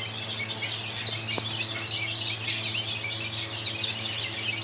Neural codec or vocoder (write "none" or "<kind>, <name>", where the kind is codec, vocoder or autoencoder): none